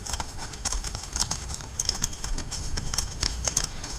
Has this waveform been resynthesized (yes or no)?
yes